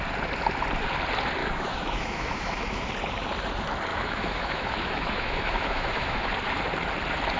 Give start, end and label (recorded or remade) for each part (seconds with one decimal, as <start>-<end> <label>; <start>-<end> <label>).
0.0-1.4 recorded; 1.4-2.9 remade; 2.9-3.9 recorded; 3.9-6.3 remade; 6.3-7.4 recorded